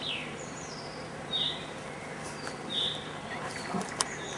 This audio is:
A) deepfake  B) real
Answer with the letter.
A